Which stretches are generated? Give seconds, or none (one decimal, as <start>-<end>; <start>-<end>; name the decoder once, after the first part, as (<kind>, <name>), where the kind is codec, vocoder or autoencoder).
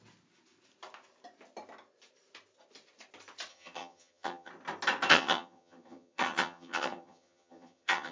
3.5-4.5 (vocoder, HiFi-GAN); 5.1-8.1